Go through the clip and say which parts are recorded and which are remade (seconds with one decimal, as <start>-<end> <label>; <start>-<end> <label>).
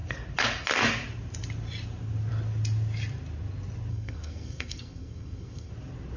0.0-3.9 recorded; 3.9-5.7 remade; 5.7-6.2 recorded